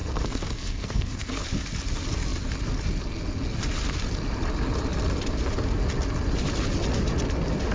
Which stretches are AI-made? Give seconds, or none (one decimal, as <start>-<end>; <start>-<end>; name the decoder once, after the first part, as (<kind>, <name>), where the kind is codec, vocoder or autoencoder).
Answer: 0.0-1.3 (codec, SNAC)